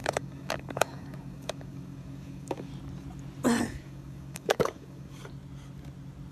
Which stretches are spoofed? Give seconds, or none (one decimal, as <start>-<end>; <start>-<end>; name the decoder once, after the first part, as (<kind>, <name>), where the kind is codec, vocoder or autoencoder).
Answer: 0.0-2.7 (codec, DAC); 3.6-5.2